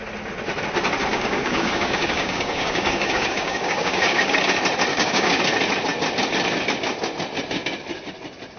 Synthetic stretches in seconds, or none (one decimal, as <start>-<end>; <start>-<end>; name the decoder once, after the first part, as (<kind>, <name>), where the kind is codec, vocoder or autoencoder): 1.1-4.4 (codec, DAC); 4.9-5.4